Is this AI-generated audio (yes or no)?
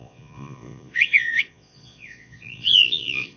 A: yes